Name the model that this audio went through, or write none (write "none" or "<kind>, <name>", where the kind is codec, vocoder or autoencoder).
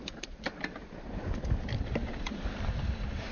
vocoder, BigVGAN v2